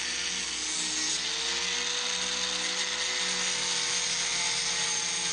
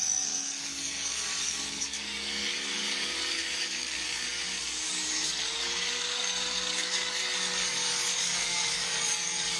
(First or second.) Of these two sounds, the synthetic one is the second